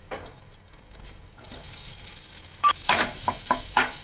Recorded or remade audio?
remade